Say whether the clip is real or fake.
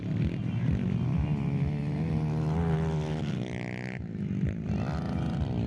real